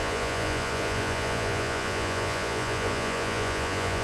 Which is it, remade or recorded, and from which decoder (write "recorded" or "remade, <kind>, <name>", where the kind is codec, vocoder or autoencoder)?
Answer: remade, vocoder, Vocos